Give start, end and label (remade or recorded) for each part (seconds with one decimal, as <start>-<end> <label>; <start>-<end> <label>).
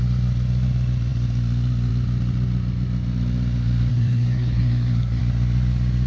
0.0-3.9 recorded; 3.9-5.2 remade; 5.2-6.1 recorded